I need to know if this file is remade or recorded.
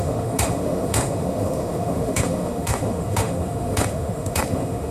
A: remade